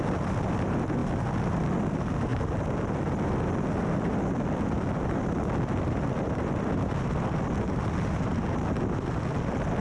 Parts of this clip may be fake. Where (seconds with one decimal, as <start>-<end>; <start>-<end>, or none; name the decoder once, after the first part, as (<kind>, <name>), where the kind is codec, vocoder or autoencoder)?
none